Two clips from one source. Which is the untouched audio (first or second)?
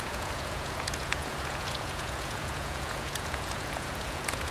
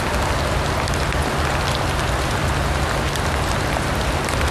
second